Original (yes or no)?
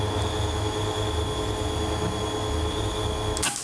yes